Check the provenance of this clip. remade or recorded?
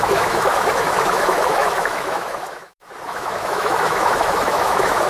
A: remade